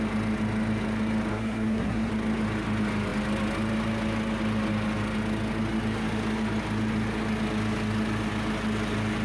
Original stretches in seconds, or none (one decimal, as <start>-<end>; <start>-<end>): 0.0-1.3; 2.1-9.2